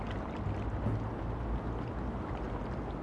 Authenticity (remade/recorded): recorded